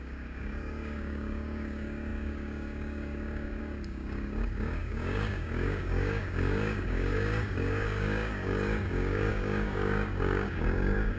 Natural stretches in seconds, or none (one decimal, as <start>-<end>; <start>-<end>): none